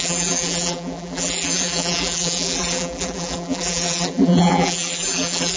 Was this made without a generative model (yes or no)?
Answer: no